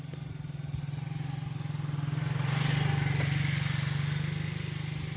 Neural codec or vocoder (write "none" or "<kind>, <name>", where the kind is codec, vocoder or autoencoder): none